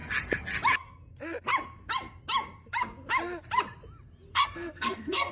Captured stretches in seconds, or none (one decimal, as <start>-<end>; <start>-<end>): 0.0-4.3